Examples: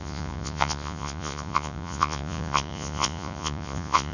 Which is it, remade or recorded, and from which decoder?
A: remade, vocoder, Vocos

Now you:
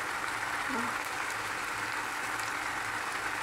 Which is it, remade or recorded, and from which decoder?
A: recorded